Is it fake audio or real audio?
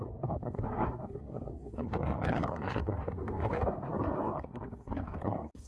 fake